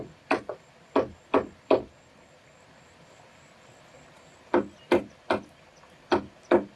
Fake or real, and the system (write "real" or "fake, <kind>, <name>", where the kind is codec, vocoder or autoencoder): real